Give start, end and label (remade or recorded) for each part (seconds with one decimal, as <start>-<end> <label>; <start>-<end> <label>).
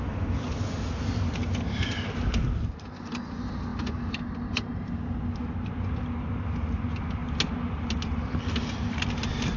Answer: 0.0-9.6 recorded